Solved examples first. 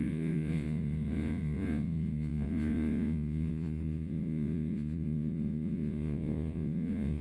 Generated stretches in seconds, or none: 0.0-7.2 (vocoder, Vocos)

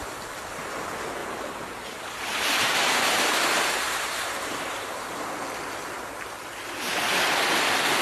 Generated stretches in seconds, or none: 1.2-5.3 (vocoder, BigVGAN v2)

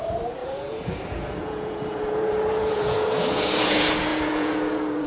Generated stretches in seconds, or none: 0.0-5.1 (vocoder, Vocos)

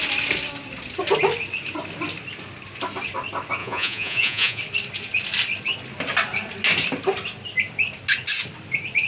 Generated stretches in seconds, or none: 3.6-4.6 (vocoder, Vocos)

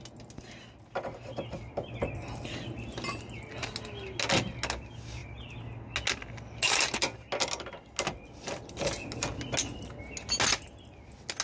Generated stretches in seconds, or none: none

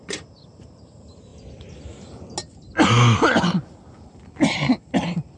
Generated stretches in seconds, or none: 0.0-0.8 (vocoder, BigVGAN v2)

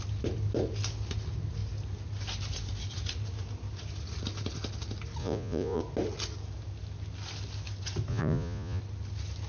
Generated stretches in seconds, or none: 5.2-5.8 (vocoder, Vocos); 8.1-8.8